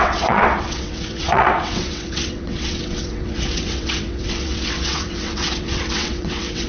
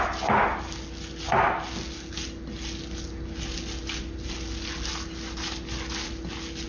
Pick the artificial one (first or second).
first